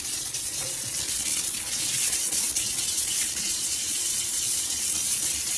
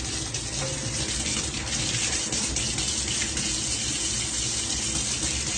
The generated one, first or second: first